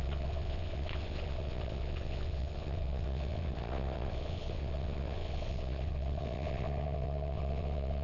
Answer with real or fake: fake